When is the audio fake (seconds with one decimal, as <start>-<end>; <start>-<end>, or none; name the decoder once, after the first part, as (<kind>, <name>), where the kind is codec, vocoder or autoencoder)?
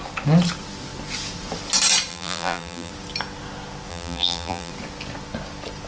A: 2.1-2.9 (vocoder, BigVGAN v2); 3.9-4.7